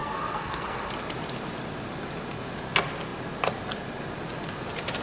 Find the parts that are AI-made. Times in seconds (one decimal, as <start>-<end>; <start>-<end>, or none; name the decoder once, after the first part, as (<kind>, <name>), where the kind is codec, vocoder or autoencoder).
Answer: 0.0-0.9 (codec, SNAC)